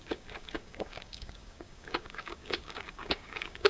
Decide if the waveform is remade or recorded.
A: remade